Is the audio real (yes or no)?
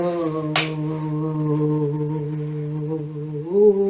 yes